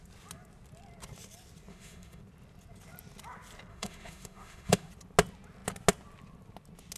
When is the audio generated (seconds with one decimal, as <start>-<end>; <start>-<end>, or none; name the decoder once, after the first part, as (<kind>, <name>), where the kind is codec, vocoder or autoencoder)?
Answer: 1.7-2.2 (autoencoder, DAC-VAE); 3.7-4.9